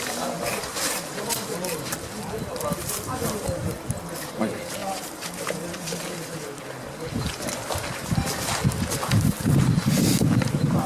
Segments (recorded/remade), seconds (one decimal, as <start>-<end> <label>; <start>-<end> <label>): 0.0-0.7 recorded; 0.7-3.7 remade; 3.7-4.8 recorded; 4.8-6.0 remade; 6.0-10.9 recorded